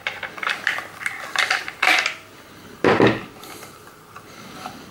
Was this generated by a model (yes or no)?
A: yes